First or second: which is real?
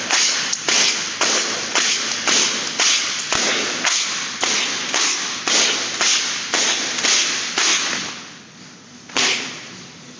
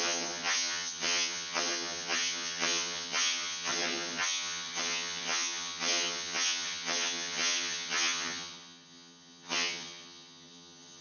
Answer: first